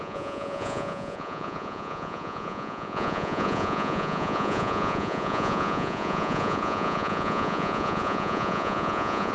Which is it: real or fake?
fake